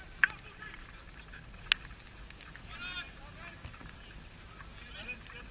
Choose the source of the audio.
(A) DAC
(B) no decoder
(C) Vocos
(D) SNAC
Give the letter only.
B